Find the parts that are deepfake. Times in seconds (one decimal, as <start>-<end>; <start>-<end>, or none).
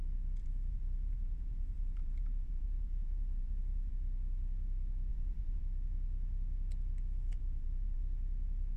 0.4-3.9; 5.1-5.6; 7.3-8.0